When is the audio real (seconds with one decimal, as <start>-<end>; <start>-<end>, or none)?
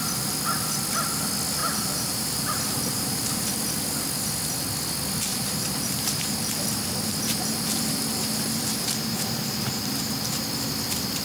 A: 0.0-1.6; 3.6-5.3; 10.4-11.2